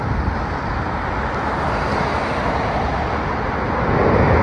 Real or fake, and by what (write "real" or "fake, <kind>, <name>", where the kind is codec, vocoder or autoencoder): real